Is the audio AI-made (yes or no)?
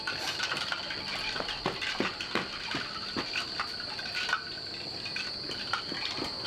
no